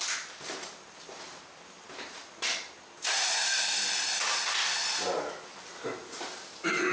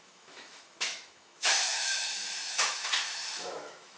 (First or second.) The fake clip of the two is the second